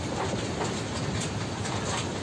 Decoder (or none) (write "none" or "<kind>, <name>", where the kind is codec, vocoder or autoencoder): none